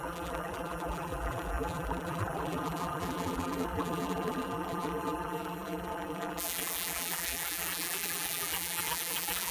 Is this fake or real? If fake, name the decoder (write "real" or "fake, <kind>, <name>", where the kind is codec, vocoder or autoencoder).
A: fake, vocoder, BigVGAN v2